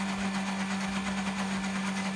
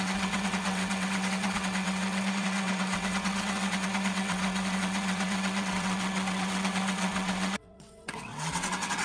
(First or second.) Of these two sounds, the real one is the first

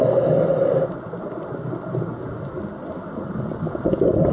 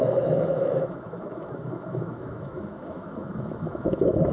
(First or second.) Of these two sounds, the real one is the first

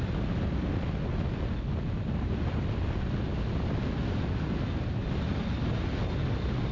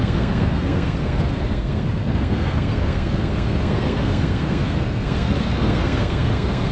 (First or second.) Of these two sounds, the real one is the first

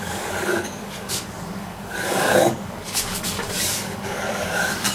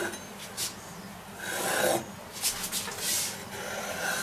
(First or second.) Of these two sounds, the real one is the second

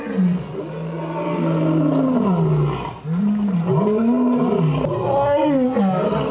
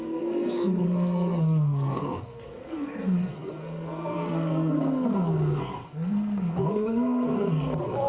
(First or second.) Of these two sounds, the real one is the first